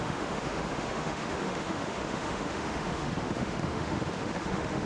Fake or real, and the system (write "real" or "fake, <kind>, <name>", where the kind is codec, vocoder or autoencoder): fake, autoencoder, DAC-VAE